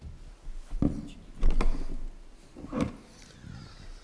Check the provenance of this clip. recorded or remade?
recorded